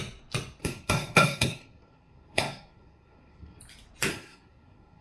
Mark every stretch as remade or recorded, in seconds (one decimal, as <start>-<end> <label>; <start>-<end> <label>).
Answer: 0.0-0.6 recorded; 0.6-3.6 remade; 3.6-4.1 recorded; 4.1-5.0 remade